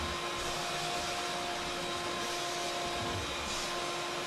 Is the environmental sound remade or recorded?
recorded